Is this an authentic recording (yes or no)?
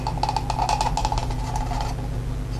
yes